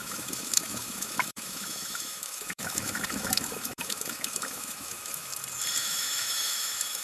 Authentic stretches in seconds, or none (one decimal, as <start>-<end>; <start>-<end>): 5.3-5.8